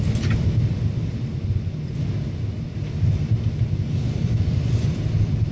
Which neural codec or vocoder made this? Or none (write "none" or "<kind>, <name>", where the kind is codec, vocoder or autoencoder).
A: none